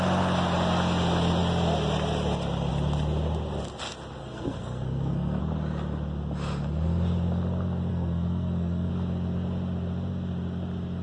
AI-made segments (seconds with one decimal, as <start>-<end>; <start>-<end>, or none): 4.2-5.4; 7.9-8.9